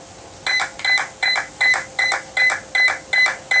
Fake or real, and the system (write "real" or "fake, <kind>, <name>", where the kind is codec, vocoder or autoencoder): real